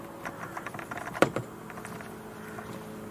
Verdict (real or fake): real